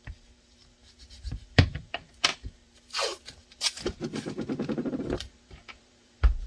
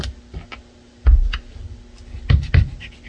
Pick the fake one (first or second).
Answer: first